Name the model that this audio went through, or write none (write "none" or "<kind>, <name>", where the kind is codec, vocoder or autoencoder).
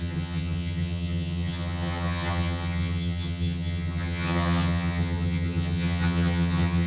vocoder, HiFi-GAN